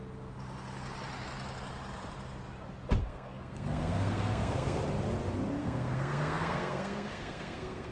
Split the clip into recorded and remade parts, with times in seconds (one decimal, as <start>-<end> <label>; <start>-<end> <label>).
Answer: 0.0-3.0 recorded; 3.0-4.8 remade; 4.8-5.6 recorded; 5.6-7.9 remade